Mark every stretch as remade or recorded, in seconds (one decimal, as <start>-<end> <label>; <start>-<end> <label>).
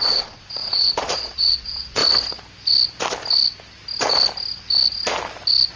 0.0-2.0 remade; 2.0-5.8 recorded